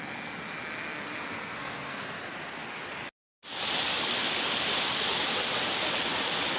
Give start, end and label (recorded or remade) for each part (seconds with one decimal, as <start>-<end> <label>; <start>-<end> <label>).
0.0-1.3 recorded; 1.3-2.0 remade; 2.0-6.6 recorded